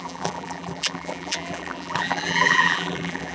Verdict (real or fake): fake